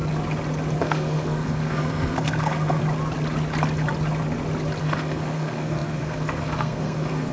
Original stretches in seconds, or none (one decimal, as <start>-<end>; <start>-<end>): 0.0-0.8; 2.8-4.8